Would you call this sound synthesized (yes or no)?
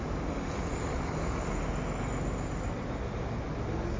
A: no